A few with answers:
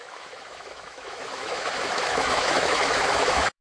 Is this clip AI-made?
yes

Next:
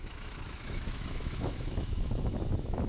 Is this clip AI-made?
yes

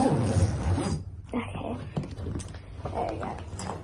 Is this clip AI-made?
no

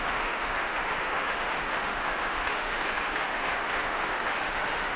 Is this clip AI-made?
yes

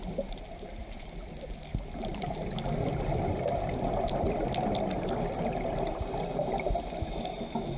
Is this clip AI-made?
no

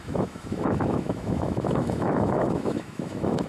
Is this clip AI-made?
yes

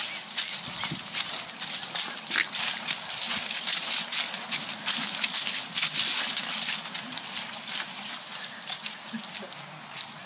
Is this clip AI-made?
no